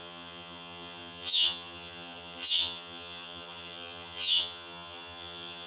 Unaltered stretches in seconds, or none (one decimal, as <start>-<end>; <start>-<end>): none